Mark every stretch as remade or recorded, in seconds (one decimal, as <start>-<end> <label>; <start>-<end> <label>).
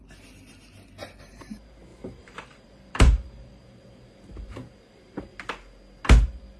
0.0-1.9 recorded; 1.9-5.2 remade; 5.2-6.6 recorded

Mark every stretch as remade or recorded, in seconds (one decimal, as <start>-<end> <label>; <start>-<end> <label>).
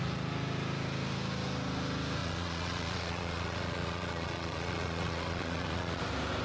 0.0-2.2 recorded; 2.2-6.0 remade; 6.0-6.4 recorded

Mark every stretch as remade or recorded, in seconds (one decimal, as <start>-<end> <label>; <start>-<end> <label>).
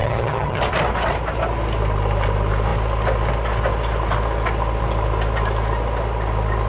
0.0-0.6 remade; 0.6-6.7 recorded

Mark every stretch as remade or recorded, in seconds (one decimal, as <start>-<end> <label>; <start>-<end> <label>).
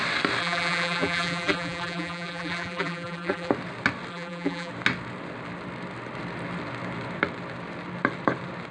0.0-0.4 recorded; 0.4-3.5 remade; 3.5-4.1 recorded; 4.1-4.7 remade; 4.7-8.7 recorded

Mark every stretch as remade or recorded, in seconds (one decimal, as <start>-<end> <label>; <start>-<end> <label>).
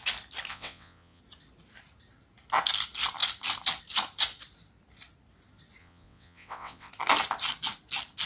0.0-0.5 recorded; 0.5-1.2 remade; 1.2-5.8 recorded; 5.8-6.9 remade; 6.9-8.3 recorded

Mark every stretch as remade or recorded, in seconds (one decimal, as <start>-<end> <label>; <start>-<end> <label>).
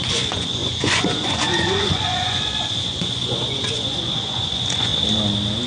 0.0-4.9 remade; 4.9-5.7 recorded